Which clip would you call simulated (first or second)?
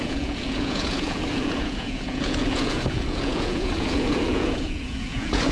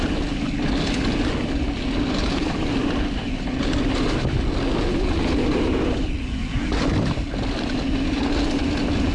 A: first